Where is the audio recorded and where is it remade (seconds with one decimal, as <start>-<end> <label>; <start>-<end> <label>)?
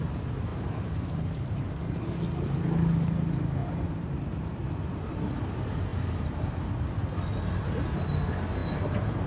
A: 0.0-0.5 recorded; 0.5-1.7 remade; 1.7-3.6 recorded; 3.6-4.7 remade; 4.7-9.3 recorded